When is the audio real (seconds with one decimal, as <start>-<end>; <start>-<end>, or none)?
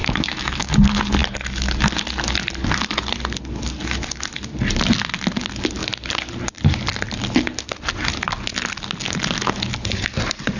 0.7-10.6